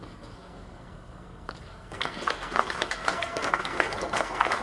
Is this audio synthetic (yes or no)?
yes